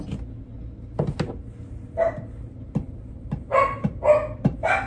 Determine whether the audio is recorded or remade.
recorded